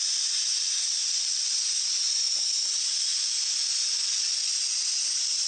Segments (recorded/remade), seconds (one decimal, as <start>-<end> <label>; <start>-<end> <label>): 0.0-1.0 recorded; 1.0-2.6 remade; 2.6-5.5 recorded